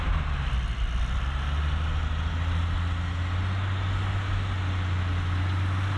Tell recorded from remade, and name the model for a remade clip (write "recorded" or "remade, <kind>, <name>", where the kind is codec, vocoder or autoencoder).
recorded